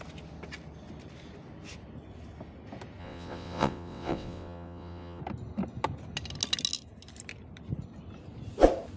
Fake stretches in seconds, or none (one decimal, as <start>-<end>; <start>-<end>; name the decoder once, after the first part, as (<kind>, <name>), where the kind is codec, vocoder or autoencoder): 3.0-5.2 (vocoder, WaveNeXt)